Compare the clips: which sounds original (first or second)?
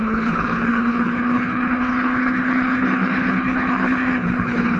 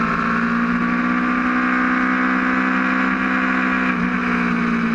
second